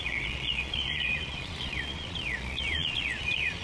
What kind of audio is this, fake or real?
fake